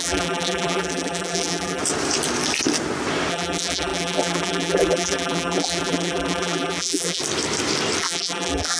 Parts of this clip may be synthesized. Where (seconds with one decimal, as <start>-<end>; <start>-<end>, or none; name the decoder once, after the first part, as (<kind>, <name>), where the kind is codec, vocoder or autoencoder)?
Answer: 0.0-1.8 (vocoder, BigVGAN v2); 3.3-7.2; 8.0-8.8